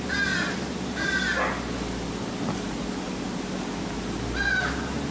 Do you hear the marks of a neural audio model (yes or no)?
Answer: no